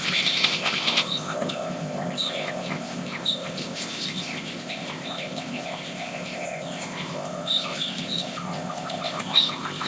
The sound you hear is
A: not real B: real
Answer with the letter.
A